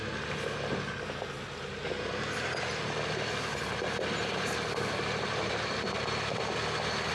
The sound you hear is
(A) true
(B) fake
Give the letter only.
A